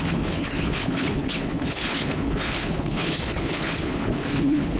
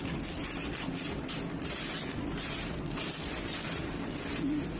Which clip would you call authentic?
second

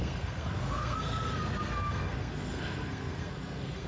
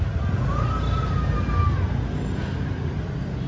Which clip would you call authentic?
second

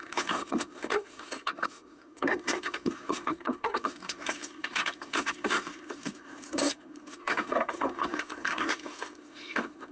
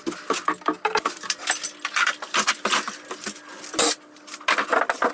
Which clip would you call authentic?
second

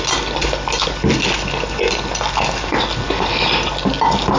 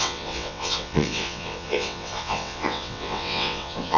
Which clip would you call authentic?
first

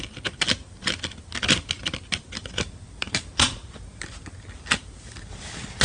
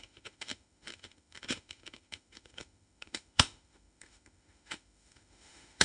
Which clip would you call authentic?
first